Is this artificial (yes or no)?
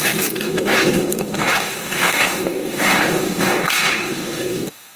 yes